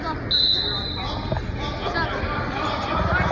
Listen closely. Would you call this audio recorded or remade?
recorded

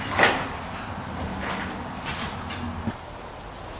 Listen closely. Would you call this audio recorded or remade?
recorded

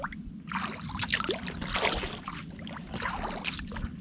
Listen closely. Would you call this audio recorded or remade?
recorded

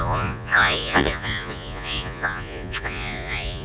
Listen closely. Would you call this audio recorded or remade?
remade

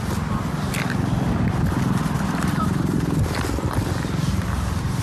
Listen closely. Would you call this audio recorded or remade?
recorded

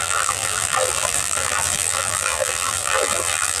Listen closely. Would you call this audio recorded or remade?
remade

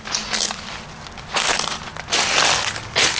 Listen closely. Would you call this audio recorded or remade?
recorded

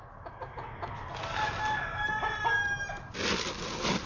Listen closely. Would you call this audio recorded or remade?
recorded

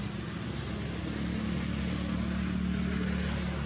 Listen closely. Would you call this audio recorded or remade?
recorded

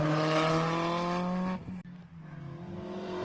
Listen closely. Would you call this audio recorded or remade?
recorded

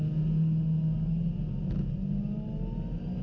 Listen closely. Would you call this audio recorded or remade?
recorded